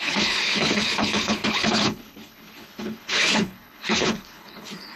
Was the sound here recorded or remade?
remade